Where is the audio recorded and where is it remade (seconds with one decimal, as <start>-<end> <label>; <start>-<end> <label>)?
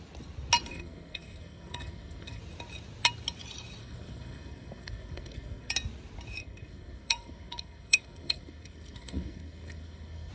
0.0-0.7 recorded; 0.7-2.4 remade; 2.4-3.8 recorded; 3.8-5.7 remade; 5.7-6.4 recorded; 6.4-10.3 remade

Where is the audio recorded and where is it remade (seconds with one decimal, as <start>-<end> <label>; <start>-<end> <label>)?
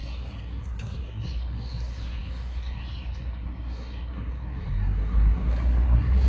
0.0-6.3 remade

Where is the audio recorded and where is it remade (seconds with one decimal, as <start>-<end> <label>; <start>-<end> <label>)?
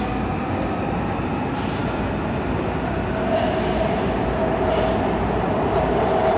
0.0-6.4 recorded